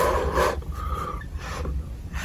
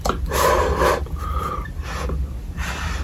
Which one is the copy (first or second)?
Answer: first